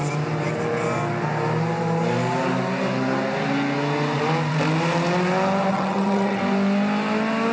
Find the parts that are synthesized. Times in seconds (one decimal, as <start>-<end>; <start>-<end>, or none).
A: 5.7-6.4